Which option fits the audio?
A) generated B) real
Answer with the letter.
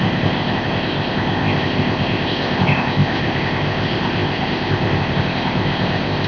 A